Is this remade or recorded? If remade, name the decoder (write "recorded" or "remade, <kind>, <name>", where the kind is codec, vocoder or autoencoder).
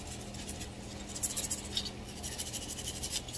recorded